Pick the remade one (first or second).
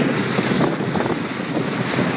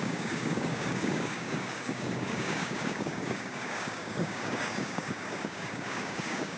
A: second